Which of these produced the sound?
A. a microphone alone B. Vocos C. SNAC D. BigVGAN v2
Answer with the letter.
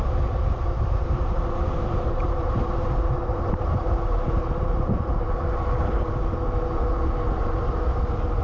D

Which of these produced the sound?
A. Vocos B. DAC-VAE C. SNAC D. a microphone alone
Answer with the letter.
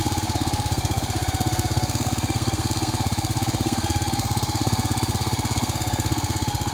C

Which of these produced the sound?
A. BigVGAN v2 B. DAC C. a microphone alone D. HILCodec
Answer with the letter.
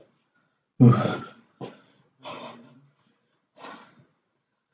C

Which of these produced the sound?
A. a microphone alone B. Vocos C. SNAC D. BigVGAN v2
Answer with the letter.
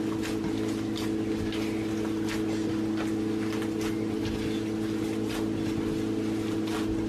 A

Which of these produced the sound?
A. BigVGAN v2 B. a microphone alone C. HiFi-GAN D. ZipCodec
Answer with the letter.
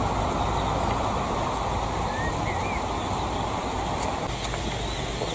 B